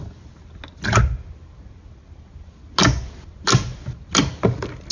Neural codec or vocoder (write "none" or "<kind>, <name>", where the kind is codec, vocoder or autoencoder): none